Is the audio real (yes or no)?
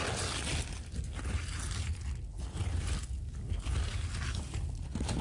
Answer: yes